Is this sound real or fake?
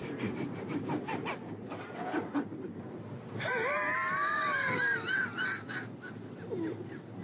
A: fake